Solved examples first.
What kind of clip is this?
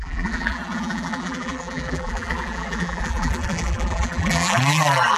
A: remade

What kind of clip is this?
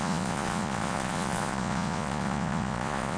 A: remade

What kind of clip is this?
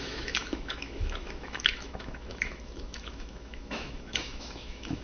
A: remade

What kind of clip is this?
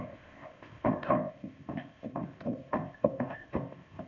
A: remade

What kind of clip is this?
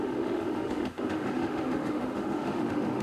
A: remade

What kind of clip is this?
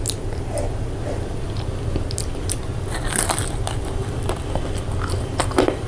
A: recorded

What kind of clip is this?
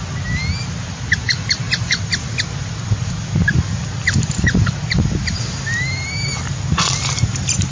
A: recorded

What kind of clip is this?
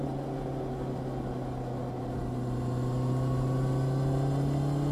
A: recorded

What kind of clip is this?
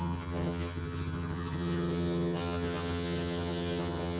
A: remade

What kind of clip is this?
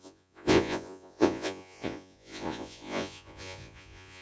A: remade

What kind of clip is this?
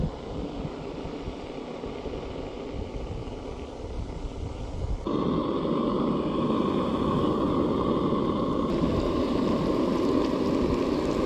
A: recorded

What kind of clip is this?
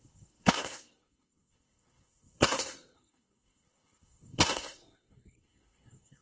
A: remade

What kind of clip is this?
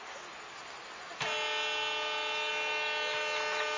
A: recorded